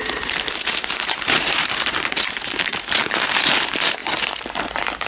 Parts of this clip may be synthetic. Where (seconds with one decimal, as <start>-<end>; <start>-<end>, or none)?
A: 0.0-4.0; 4.5-5.1